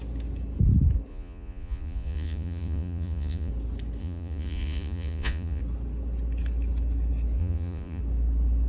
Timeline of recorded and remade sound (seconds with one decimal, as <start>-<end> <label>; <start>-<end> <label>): 0.0-1.1 recorded; 1.1-3.5 remade; 3.5-4.0 recorded; 4.0-5.6 remade; 5.6-7.4 recorded; 7.4-8.0 remade; 8.0-8.7 recorded